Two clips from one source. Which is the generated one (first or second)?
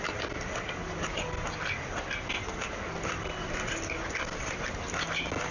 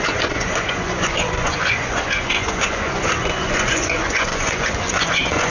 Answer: second